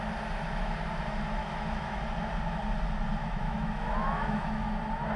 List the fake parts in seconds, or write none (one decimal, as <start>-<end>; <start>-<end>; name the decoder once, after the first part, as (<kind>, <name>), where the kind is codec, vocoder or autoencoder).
1.4-2.0 (autoencoder, DAC-VAE); 3.2-4.8